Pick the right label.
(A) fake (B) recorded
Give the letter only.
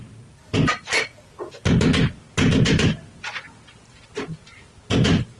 B